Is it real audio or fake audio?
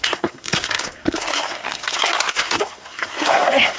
fake